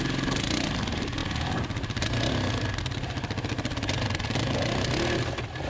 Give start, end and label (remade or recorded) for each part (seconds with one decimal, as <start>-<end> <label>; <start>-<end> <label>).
0.0-5.7 recorded

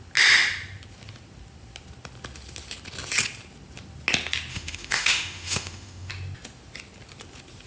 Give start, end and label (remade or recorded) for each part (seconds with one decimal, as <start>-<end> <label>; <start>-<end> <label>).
0.0-4.5 recorded; 4.5-6.1 remade; 6.1-7.7 recorded

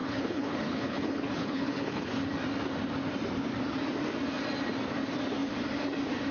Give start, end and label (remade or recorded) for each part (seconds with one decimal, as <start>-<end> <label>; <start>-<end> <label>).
0.0-2.3 remade; 2.3-6.3 recorded

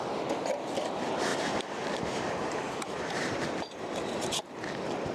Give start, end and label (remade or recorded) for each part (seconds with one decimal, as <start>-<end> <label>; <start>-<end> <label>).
0.0-1.3 recorded; 1.3-4.4 remade; 4.4-5.1 recorded

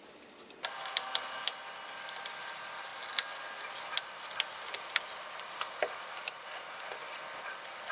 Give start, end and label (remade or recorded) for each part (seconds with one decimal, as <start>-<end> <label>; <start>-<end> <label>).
0.0-7.9 recorded

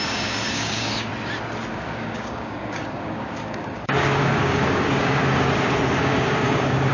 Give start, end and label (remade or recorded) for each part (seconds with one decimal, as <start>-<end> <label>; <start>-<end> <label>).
0.0-1.1 remade; 1.1-1.7 recorded; 1.7-5.2 remade; 5.2-6.0 recorded; 6.0-6.9 remade

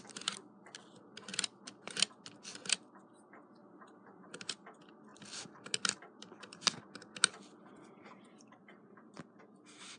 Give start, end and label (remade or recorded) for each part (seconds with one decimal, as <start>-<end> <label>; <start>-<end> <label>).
0.0-1.3 recorded; 1.3-2.9 remade; 2.9-3.6 recorded; 3.6-4.4 remade; 4.4-8.6 recorded; 8.6-9.4 remade; 9.4-10.0 recorded

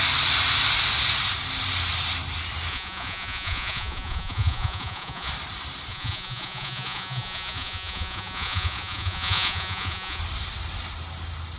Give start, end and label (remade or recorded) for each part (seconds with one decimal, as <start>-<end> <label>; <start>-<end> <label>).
0.0-2.7 recorded; 2.7-5.3 remade; 5.3-5.9 recorded; 5.9-10.2 remade; 10.2-11.6 recorded